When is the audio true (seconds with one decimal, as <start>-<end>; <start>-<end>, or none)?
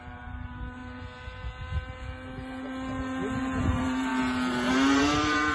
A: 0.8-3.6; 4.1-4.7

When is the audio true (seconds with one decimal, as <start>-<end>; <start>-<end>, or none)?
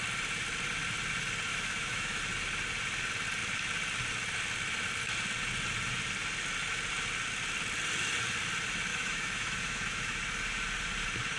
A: 0.0-1.5; 2.2-8.9; 10.2-11.4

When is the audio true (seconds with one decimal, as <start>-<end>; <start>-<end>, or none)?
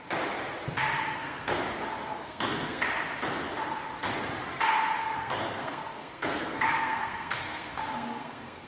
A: 0.0-1.1; 1.6-2.1; 2.8-5.0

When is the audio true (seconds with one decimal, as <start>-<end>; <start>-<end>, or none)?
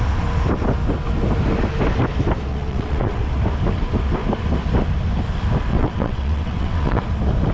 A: 0.0-2.5; 3.3-5.7; 7.0-7.5